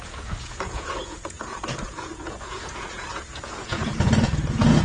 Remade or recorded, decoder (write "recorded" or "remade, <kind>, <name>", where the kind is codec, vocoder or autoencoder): remade, vocoder, Vocos